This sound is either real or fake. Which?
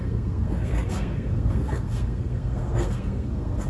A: fake